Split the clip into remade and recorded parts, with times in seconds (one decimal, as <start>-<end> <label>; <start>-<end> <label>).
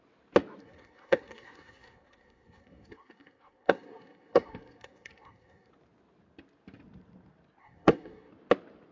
0.0-0.6 recorded; 0.6-5.7 remade; 5.7-7.6 recorded; 7.6-8.3 remade; 8.3-8.9 recorded